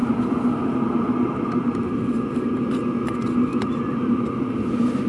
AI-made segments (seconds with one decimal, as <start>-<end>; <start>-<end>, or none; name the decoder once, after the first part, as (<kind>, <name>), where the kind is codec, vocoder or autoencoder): 0.0-2.3 (vocoder, BigVGAN v2)